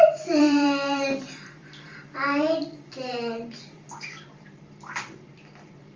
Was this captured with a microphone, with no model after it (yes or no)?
no